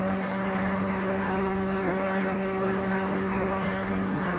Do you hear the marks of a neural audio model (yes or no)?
yes